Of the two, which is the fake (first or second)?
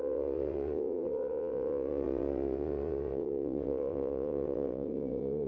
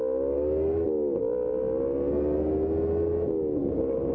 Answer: first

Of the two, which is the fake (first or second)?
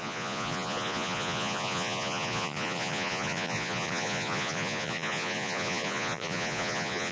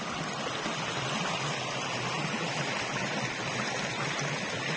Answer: first